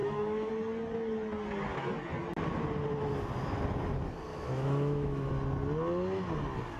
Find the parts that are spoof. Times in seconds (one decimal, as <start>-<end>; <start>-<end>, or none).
0.0-0.5; 4.3-5.3